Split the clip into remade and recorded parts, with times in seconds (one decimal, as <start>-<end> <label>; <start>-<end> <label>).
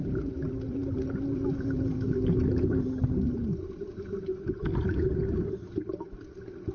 0.0-6.7 recorded